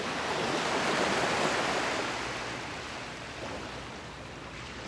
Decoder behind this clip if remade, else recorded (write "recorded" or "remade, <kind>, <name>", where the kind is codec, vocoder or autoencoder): recorded